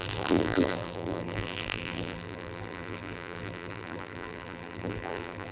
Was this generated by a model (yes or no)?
yes